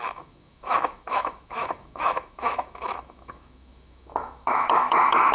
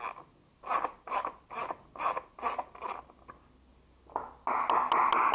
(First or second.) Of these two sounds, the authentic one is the second